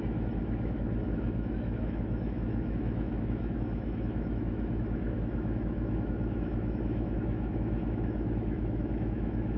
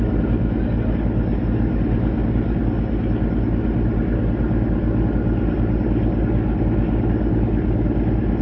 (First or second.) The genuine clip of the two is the second